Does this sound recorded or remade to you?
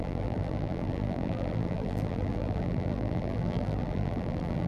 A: remade